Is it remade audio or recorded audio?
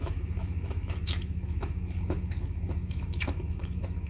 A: remade